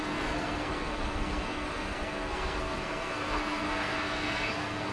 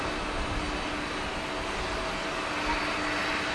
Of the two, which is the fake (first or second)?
first